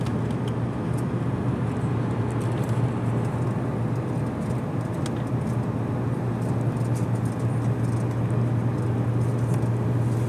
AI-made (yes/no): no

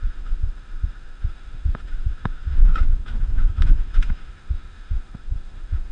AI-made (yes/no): yes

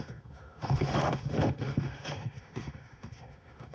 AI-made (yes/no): yes